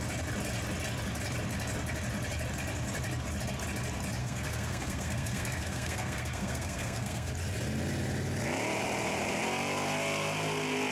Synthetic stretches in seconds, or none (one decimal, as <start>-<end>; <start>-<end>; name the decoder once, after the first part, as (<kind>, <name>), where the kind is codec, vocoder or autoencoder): 4.2-7.3 (codec, SNAC)